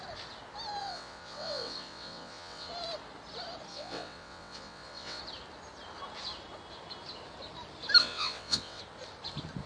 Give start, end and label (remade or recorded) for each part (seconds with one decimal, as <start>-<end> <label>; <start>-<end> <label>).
0.0-0.8 recorded; 0.8-2.7 remade; 2.7-3.7 recorded; 3.7-5.2 remade; 5.2-8.0 recorded; 8.0-8.8 remade; 8.8-9.7 recorded